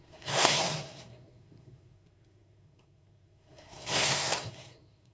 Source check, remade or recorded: remade